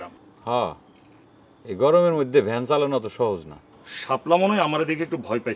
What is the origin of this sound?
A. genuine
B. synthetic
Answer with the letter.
A